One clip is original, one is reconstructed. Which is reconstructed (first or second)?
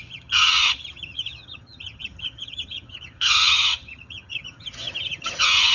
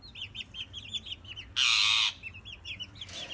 first